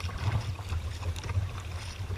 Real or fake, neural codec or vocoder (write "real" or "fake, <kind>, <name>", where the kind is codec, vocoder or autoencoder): real